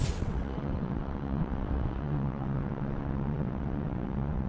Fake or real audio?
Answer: fake